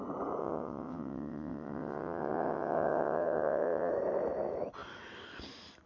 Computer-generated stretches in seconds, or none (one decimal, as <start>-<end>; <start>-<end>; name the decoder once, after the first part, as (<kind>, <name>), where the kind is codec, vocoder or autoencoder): 0.4-3.9 (vocoder, WaveNeXt)